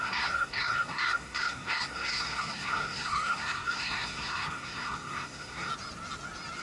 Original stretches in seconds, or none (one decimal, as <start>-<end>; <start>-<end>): 5.7-6.6